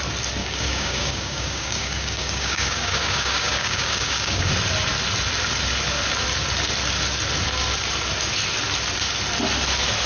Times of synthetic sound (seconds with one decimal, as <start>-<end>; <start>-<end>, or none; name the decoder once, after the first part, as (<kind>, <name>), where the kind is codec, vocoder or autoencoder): 0.4-4.5 (codec, DAC)